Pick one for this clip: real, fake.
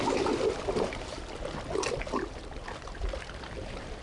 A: real